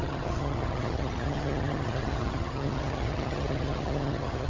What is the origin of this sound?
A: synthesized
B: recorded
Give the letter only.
A